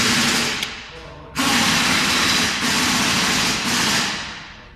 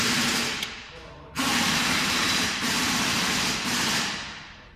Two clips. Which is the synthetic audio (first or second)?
second